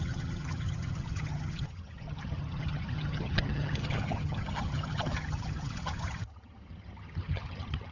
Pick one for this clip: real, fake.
fake